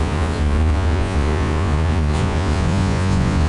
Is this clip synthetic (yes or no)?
yes